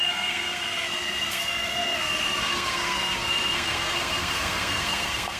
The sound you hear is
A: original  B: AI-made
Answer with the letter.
B